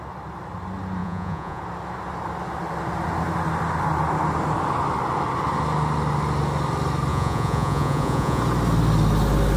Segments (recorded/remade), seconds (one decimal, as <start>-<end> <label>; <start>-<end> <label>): 0.0-1.0 recorded; 1.0-1.6 remade; 1.6-7.1 recorded; 7.1-8.4 remade; 8.4-9.6 recorded